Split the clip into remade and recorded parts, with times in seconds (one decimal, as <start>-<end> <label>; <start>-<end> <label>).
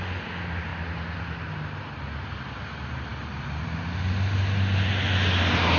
0.0-5.8 recorded